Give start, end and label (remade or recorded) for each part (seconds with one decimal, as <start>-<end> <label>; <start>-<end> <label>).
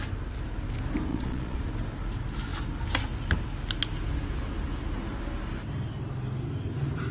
0.0-1.1 recorded; 1.1-1.7 remade; 1.7-7.1 recorded